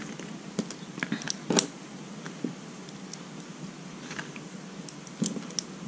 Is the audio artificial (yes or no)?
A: no